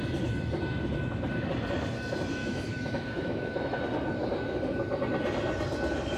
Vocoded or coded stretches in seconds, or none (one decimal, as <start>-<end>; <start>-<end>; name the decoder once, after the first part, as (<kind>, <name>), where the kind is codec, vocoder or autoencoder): 2.4-3.8 (autoencoder, DAC-VAE)